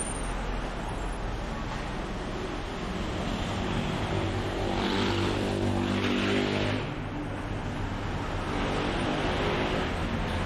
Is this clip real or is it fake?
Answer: real